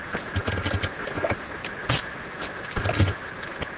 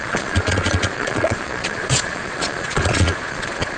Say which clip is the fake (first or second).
second